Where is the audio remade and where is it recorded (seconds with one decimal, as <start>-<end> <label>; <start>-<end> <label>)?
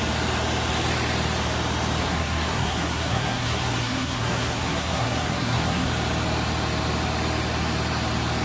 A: 0.0-2.0 recorded; 2.0-5.9 remade; 5.9-8.4 recorded